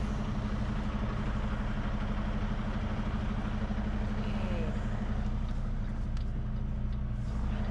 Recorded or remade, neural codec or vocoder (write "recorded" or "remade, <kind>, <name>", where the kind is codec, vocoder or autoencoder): recorded